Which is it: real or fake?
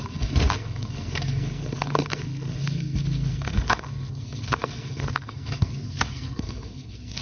fake